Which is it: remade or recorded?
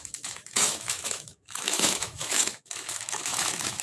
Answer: remade